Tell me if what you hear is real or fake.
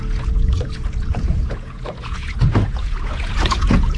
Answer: fake